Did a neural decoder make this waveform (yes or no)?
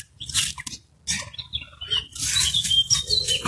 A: no